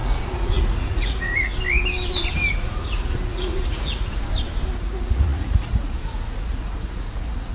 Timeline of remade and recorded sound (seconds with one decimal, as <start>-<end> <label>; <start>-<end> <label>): 0.0-1.5 remade; 1.5-2.5 recorded; 2.5-4.2 remade; 4.2-4.8 recorded; 4.8-7.5 remade